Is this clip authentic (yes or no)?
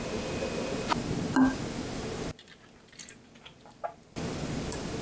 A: yes